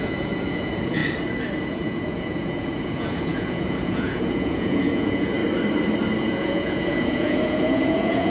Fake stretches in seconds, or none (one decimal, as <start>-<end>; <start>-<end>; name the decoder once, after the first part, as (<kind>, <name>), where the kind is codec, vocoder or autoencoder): 0.0-1.0 (vocoder, Vocos); 1.6-5.4; 6.2-8.3